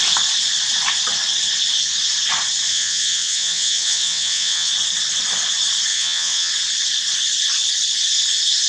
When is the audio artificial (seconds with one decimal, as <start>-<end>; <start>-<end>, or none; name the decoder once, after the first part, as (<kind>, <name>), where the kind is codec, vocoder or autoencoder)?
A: 2.7-4.7 (vocoder, WaveNeXt); 5.9-6.5